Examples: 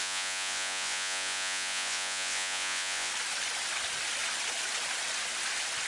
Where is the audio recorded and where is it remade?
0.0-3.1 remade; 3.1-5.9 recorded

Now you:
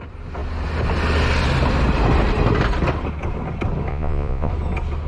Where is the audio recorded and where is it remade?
0.0-3.9 recorded; 3.9-4.5 remade; 4.5-5.1 recorded

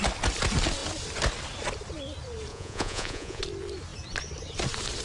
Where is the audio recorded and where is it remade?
0.0-2.5 recorded; 2.5-3.4 remade; 3.4-5.0 recorded

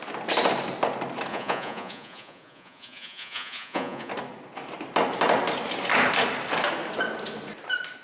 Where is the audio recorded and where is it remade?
0.0-1.3 recorded; 1.3-4.1 remade; 4.1-8.0 recorded

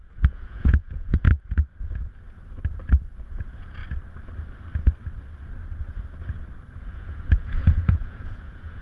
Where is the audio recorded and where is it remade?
0.0-1.3 remade; 1.3-3.3 recorded; 3.3-3.8 remade; 3.8-6.8 recorded; 6.8-8.8 remade

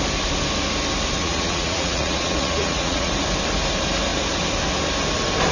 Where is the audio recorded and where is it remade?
0.0-1.2 recorded; 1.2-3.1 remade; 3.1-5.5 recorded

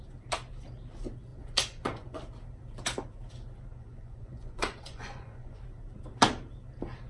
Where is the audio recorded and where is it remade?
0.0-1.3 recorded; 1.3-2.2 remade; 2.2-3.7 recorded; 3.7-5.6 remade; 5.6-7.1 recorded

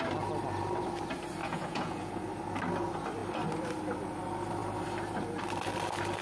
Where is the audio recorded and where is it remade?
0.0-1.4 recorded; 1.4-2.1 remade; 2.1-6.2 recorded